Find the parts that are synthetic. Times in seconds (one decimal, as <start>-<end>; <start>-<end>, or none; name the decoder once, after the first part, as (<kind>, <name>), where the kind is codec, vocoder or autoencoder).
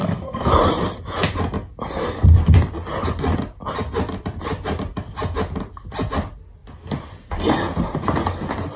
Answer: 0.0-0.5 (codec, SNAC)